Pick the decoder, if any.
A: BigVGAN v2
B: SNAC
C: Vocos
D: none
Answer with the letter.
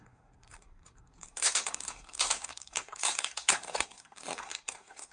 B